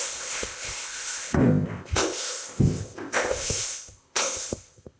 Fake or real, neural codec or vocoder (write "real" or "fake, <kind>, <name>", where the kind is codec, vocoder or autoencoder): fake, codec, ZipCodec